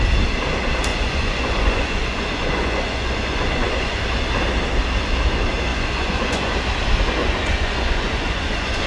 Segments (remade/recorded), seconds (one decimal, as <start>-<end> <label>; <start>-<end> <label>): 0.0-0.9 recorded; 0.9-4.0 remade; 4.0-5.7 recorded; 5.7-6.5 remade; 6.5-7.2 recorded; 7.2-8.9 remade